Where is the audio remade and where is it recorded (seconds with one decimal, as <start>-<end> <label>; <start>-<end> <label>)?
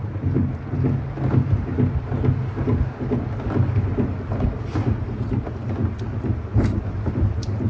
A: 0.0-7.7 recorded